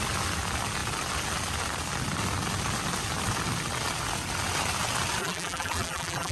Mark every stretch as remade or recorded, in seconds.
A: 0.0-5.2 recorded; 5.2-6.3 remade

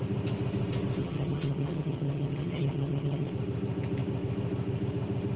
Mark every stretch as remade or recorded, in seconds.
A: 0.0-1.0 recorded; 1.0-3.3 remade; 3.3-5.4 recorded

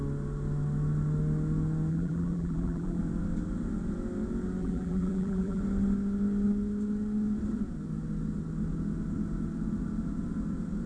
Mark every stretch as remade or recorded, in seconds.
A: 0.0-1.9 recorded; 1.9-3.0 remade; 3.0-4.6 recorded; 4.6-5.6 remade; 5.6-10.9 recorded

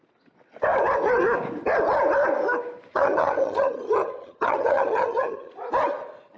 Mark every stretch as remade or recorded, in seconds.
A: 0.0-2.9 recorded; 2.9-5.5 remade; 5.5-6.4 recorded

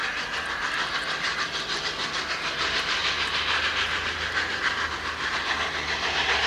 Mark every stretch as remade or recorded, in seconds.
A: 0.0-6.5 recorded